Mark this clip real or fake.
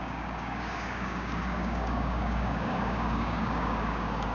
fake